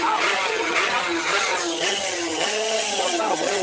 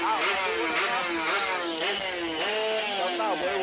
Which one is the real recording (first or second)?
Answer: second